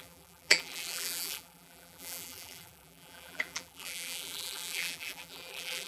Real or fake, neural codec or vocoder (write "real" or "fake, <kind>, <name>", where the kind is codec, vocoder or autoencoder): fake, vocoder, BigVGAN v2